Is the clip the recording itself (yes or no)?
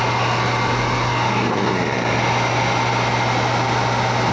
yes